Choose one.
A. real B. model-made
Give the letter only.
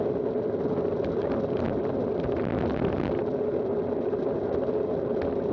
A